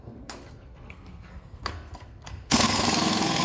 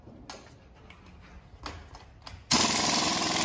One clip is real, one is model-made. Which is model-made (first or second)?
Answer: first